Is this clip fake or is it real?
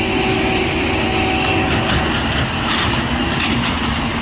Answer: real